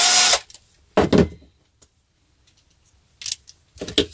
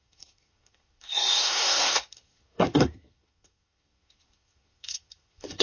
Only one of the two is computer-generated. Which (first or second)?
second